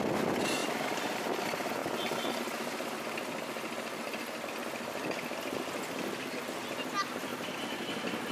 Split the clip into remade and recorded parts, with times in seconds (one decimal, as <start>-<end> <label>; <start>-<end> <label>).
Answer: 0.0-0.6 recorded; 0.6-1.4 remade; 1.4-8.3 recorded